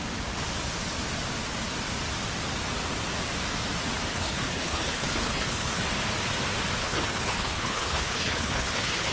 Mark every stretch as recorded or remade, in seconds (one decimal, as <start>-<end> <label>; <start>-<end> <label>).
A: 0.0-4.1 recorded; 4.1-5.8 remade; 5.8-6.8 recorded; 6.8-9.1 remade